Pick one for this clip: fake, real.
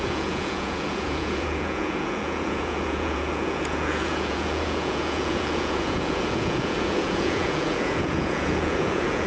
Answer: fake